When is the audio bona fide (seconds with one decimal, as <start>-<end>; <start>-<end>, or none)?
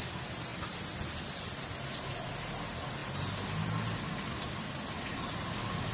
0.0-5.9